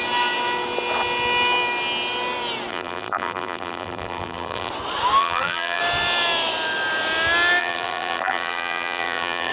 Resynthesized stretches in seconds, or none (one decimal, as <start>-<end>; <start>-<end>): 2.7-4.7; 5.2-5.8; 7.6-9.5